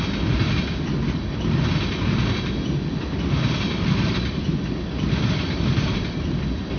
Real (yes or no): yes